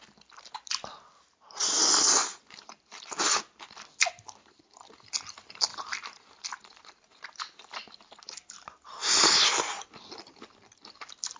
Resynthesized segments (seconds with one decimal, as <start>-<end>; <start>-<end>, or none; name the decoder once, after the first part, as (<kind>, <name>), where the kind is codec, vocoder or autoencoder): 2.3-3.0 (vocoder, BigVGAN v2); 5.7-8.3; 9.0-9.8